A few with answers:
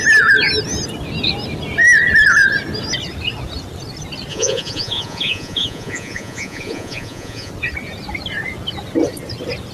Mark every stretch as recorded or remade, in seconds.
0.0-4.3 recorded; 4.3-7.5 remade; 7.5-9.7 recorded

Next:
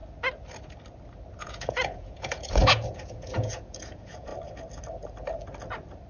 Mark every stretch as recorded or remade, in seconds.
0.0-1.4 recorded; 1.4-4.3 remade; 4.3-6.1 recorded